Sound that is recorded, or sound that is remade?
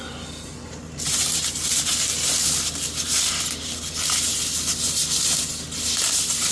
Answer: recorded